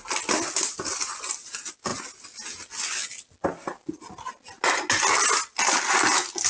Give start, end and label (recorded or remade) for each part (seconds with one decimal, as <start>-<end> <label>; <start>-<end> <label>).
0.0-6.5 recorded